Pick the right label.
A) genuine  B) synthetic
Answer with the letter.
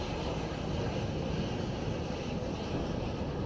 A